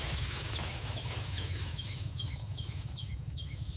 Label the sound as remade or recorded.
remade